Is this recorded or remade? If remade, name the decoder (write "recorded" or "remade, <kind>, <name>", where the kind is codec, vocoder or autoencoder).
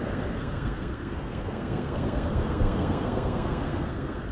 remade, codec, SNAC